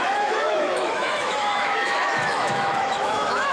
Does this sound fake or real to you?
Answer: fake